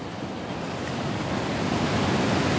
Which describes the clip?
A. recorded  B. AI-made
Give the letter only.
A